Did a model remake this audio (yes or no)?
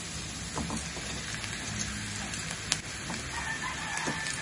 no